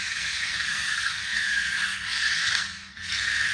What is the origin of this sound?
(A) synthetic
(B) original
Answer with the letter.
A